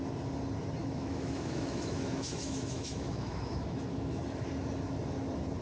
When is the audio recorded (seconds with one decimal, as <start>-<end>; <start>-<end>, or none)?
0.0-0.8; 4.2-5.6